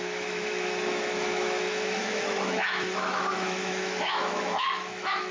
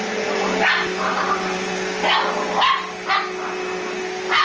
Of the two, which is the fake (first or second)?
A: first